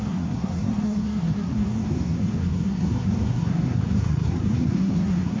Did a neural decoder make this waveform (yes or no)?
yes